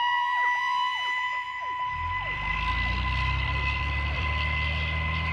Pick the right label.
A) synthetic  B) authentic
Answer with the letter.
A